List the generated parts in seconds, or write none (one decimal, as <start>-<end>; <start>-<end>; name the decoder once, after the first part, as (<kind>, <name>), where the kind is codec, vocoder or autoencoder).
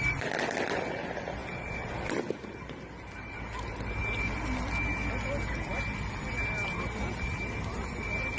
none